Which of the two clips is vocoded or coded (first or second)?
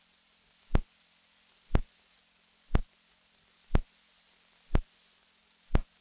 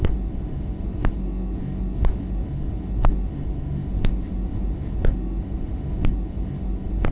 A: second